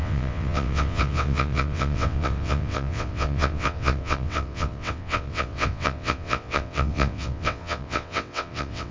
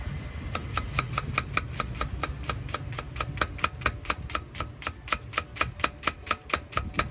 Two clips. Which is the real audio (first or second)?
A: second